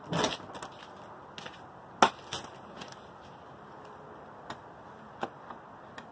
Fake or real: real